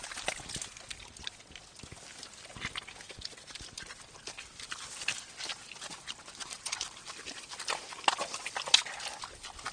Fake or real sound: real